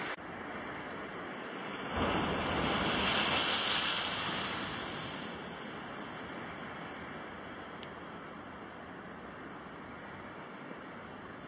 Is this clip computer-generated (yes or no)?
no